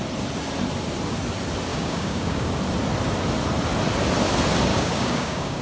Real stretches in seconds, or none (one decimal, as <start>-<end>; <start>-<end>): 0.0-1.7; 2.5-4.7